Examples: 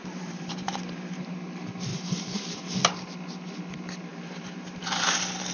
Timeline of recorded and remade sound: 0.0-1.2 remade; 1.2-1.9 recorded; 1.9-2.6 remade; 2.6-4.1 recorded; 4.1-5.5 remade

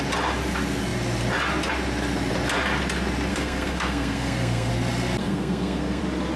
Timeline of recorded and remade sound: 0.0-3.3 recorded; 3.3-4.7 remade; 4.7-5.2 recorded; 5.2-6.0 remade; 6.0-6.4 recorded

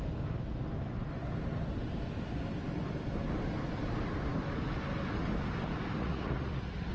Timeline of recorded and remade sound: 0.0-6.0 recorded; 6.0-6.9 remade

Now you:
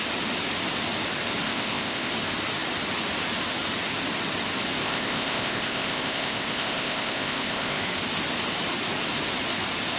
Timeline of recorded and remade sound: 0.0-1.5 recorded; 1.5-2.1 remade; 2.1-4.8 recorded; 4.8-7.8 remade; 7.8-10.0 recorded

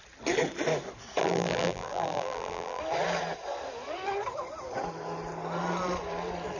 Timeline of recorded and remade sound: 0.0-1.2 recorded; 1.2-2.8 remade; 2.8-6.6 recorded

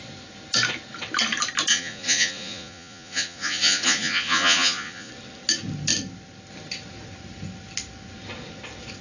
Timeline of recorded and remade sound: 0.0-1.7 recorded; 1.7-5.1 remade; 5.1-9.0 recorded

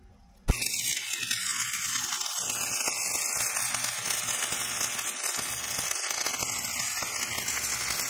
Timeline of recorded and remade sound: 0.0-8.1 recorded